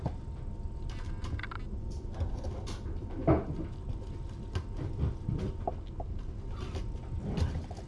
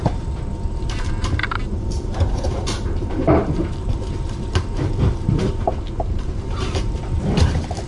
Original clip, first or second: first